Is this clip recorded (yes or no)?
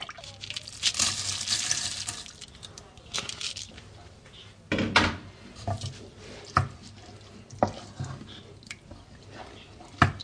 yes